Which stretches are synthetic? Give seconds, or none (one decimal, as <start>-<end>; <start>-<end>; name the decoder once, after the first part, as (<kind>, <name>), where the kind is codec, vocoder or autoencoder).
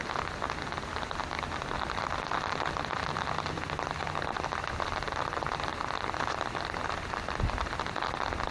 1.6-8.5 (vocoder, BigVGAN v2)